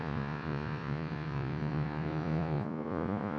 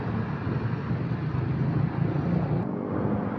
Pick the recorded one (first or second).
second